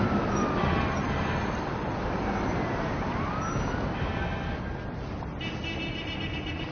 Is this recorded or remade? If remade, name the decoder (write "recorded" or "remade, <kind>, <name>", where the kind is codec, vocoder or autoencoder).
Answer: recorded